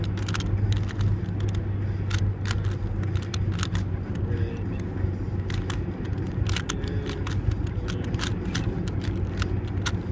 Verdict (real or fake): real